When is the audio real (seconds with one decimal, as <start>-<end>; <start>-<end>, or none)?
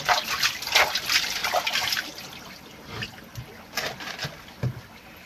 0.0-5.3